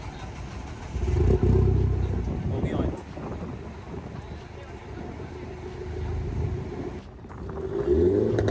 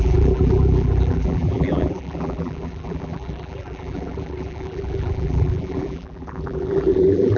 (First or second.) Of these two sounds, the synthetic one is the second